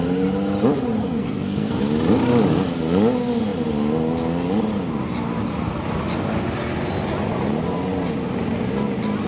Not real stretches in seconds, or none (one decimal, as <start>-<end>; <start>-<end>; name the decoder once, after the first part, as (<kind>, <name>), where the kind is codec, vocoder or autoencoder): 1.0-1.8 (codec, SNAC)